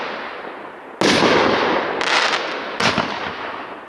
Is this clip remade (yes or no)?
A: no